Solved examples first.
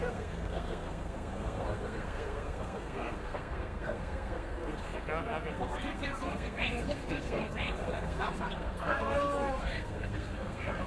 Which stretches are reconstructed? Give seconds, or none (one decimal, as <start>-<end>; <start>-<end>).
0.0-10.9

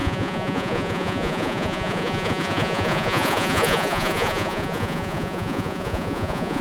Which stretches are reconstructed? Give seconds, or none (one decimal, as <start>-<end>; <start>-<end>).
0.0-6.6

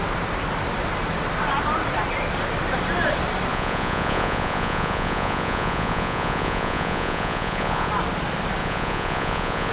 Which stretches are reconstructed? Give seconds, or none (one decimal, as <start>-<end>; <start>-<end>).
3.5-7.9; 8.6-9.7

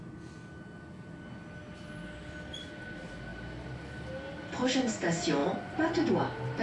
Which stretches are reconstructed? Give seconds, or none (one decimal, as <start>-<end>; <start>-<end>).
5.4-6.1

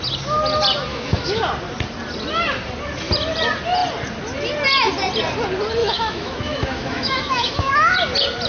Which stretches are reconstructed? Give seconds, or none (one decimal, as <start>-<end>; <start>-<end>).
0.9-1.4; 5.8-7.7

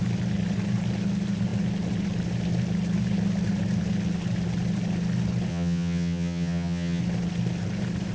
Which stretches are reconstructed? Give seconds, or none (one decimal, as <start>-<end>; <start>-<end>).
5.5-7.0

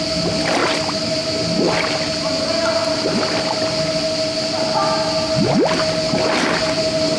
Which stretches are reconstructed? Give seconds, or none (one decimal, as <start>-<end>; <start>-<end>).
none